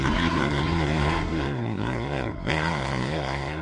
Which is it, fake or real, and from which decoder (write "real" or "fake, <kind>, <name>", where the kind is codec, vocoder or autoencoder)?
fake, codec, SNAC